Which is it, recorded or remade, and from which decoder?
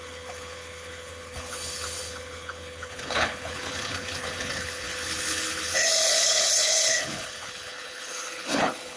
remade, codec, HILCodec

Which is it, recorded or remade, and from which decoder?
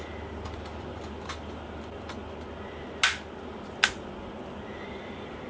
recorded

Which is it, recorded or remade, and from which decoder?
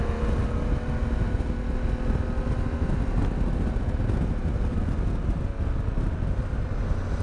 recorded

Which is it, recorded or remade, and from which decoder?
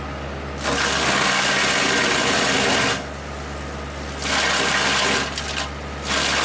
recorded